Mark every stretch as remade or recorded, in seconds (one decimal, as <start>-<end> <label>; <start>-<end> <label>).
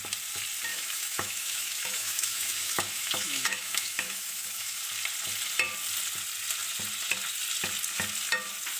0.0-0.7 recorded; 0.7-4.8 remade; 4.8-8.8 recorded